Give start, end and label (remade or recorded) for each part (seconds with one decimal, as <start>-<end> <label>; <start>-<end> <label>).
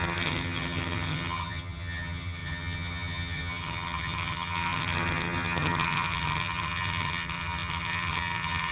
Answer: 0.0-8.7 remade